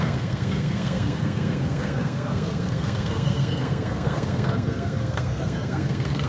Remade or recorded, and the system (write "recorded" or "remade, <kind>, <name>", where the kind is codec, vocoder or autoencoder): remade, codec, SNAC